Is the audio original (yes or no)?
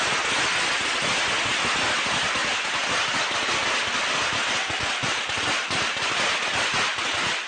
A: yes